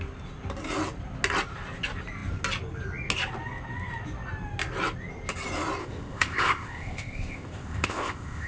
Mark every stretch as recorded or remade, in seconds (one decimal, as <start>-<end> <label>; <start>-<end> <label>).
0.0-5.8 recorded; 5.8-8.5 remade